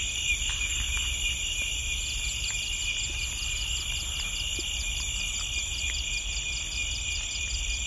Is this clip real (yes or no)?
yes